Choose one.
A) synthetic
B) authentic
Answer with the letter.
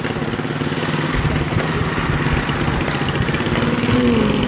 B